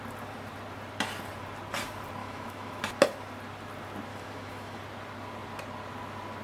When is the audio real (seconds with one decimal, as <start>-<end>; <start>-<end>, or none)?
0.0-2.2; 2.8-4.1; 4.8-6.4